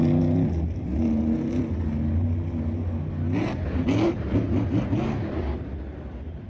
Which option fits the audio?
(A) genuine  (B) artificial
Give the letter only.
A